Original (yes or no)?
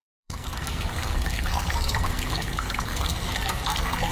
no